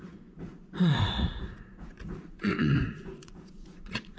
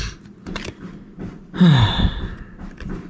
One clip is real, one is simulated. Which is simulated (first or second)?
first